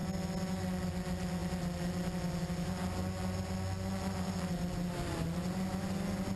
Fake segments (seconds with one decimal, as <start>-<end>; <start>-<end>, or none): none